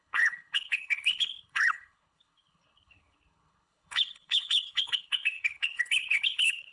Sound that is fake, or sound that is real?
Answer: fake